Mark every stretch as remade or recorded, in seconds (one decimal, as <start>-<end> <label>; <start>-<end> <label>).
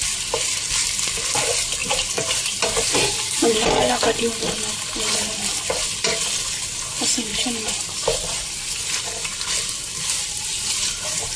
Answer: 0.0-11.4 recorded